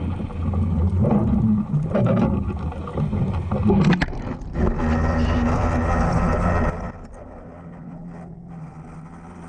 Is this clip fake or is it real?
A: real